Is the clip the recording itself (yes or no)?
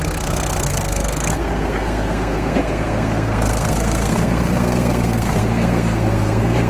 no